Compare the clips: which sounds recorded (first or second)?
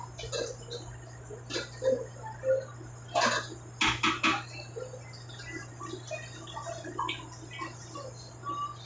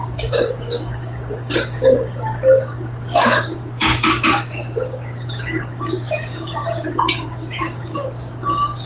first